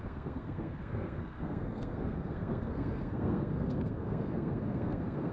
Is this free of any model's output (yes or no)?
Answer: no